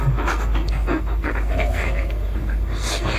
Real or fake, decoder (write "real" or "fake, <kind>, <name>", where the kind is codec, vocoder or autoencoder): fake, codec, SNAC